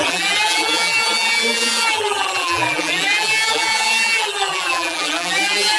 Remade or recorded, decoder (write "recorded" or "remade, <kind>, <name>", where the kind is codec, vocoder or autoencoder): remade, vocoder, BigVGAN v2